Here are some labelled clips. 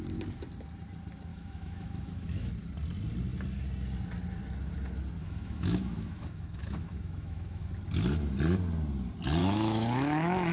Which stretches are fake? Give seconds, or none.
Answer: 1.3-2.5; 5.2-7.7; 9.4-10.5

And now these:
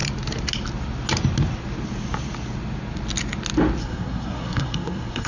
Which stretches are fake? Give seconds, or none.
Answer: 3.8-5.3

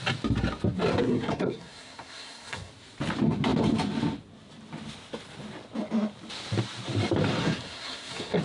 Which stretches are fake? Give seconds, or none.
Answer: 0.9-2.7; 7.4-8.4

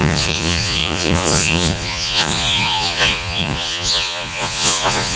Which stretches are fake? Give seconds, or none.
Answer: 0.0-5.2

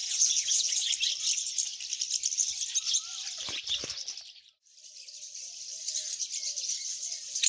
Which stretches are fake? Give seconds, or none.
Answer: 0.0-0.9

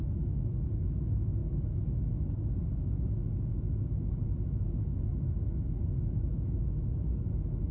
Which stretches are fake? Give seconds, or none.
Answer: 0.0-7.7